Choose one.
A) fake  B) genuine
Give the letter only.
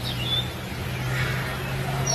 B